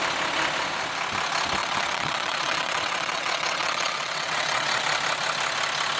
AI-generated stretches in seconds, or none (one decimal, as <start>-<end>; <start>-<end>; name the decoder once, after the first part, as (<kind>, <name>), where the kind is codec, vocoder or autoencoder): 1.6-4.8 (vocoder, WaveNeXt)

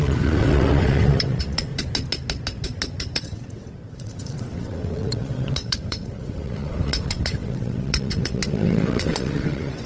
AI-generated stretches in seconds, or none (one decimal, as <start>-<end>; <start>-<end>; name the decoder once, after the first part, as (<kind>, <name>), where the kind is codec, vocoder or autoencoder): 0.0-1.7 (vocoder, WaveNeXt); 3.1-9.9

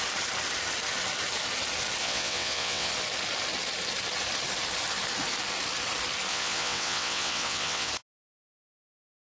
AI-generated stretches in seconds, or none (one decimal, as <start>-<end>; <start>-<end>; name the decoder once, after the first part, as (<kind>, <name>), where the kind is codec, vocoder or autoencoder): 2.0-2.9 (vocoder, WaveNeXt); 6.3-7.9

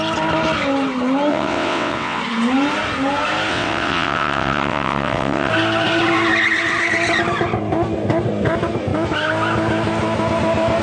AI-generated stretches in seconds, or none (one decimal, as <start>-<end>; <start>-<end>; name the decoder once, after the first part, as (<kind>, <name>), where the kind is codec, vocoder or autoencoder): 1.3-2.2 (vocoder, WaveNeXt); 3.5-5.5

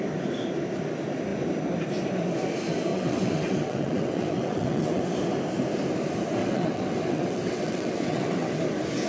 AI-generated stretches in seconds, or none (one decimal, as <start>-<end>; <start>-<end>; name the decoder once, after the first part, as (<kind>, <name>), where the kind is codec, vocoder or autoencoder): 2.9-5.0 (vocoder, WaveNeXt); 6.4-8.6

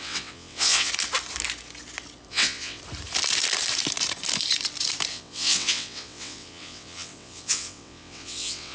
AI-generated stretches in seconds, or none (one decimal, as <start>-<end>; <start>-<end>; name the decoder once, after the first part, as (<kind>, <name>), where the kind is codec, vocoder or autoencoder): 0.0-0.9 (vocoder, WaveNeXt); 2.3-2.8; 5.1-8.7

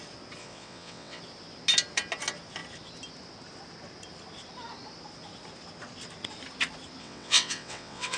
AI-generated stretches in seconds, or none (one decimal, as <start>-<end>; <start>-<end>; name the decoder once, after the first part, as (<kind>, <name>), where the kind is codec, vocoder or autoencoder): 0.4-1.2 (vocoder, WaveNeXt); 7.0-8.2

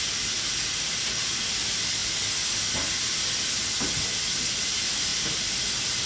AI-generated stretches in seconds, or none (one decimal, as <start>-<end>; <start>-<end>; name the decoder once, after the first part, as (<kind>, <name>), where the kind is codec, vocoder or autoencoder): none